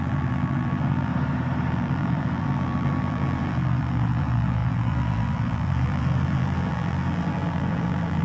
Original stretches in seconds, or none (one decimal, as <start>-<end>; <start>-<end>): 1.1-1.7

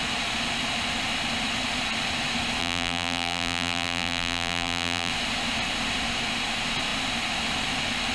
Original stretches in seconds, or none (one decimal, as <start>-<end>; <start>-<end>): 0.0-2.6; 5.1-8.1

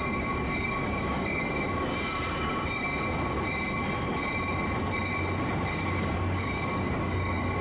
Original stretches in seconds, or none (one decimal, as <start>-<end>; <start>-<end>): 2.9-5.7